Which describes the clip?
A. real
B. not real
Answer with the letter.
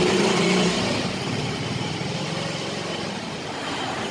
B